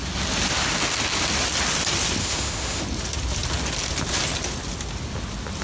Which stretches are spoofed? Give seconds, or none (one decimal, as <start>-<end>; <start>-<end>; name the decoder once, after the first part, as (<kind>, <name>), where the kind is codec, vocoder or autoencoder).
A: 2.2-2.8 (autoencoder, DAC-VAE)